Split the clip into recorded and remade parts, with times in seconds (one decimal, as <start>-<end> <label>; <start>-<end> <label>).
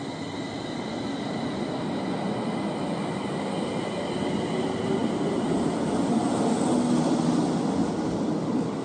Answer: 0.0-8.8 recorded